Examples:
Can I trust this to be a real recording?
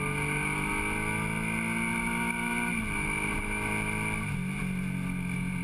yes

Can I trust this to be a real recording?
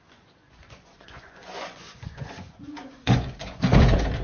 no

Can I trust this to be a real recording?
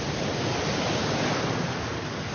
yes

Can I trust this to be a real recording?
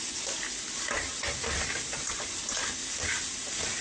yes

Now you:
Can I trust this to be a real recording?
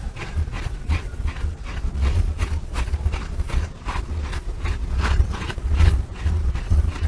no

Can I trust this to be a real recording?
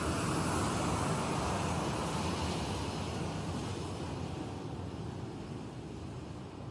yes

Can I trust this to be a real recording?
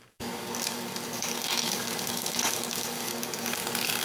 no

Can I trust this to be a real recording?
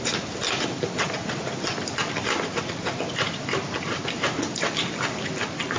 no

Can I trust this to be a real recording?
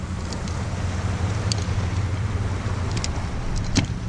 yes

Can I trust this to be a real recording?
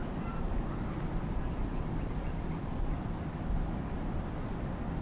yes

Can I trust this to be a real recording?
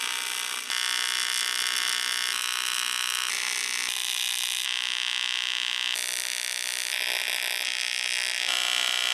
yes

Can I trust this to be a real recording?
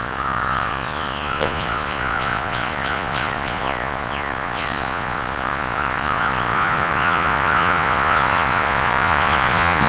no